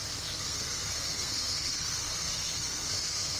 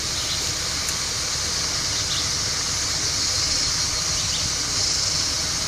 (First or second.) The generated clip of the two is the first